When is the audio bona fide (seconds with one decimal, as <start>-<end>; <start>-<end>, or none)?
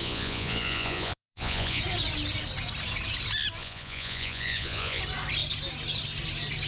1.8-3.6; 5.0-6.7